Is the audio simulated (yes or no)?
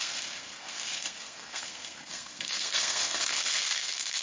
yes